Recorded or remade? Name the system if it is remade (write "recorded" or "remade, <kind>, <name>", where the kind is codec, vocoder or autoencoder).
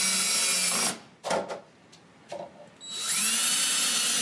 recorded